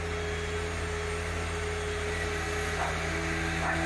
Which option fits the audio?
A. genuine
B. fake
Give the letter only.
A